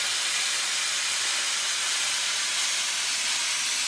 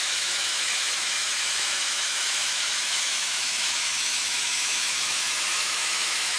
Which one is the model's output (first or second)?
second